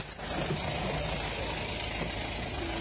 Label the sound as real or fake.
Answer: real